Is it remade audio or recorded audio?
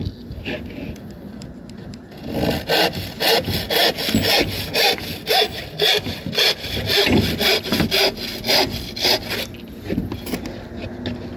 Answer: recorded